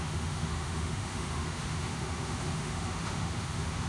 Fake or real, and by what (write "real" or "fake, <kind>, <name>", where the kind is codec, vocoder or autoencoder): fake, autoencoder, DAC-VAE